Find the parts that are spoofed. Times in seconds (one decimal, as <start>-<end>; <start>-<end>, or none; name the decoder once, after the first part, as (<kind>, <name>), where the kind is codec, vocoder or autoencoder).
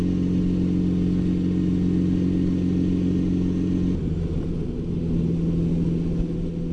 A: none